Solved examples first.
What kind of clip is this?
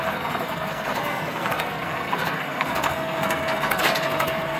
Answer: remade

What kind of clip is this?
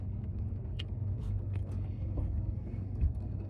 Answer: remade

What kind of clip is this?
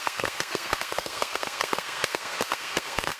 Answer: remade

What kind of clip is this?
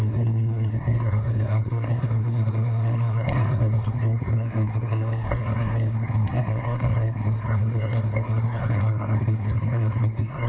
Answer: remade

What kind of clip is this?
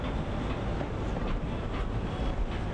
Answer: recorded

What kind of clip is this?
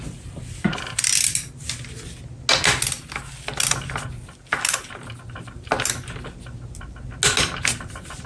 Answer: recorded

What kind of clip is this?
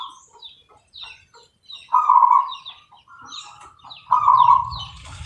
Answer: recorded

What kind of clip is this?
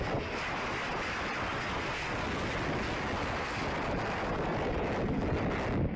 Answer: recorded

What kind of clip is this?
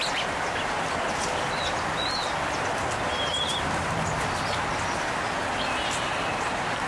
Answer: recorded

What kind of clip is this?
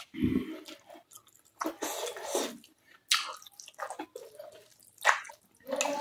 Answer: recorded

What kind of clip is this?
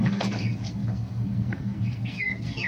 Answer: remade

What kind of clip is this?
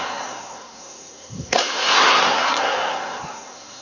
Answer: remade